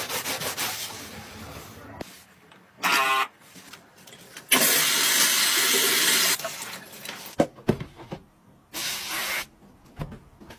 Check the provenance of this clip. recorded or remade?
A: recorded